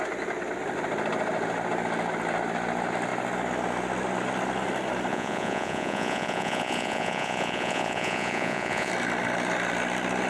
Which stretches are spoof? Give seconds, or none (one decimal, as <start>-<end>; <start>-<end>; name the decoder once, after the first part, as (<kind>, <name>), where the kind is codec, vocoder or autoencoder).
5.1-8.9 (vocoder, Vocos)